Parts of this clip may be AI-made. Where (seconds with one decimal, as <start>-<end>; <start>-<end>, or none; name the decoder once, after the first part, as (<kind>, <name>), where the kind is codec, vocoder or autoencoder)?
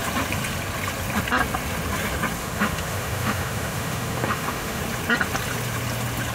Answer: 2.4-4.8 (autoencoder, DAC-VAE)